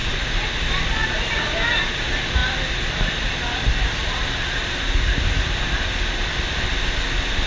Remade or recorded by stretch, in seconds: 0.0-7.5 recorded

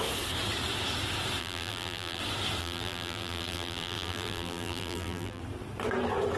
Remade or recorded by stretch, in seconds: 0.0-1.4 recorded; 1.4-2.2 remade; 2.2-2.6 recorded; 2.6-5.4 remade; 5.4-6.4 recorded